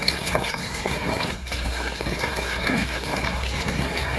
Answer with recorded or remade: remade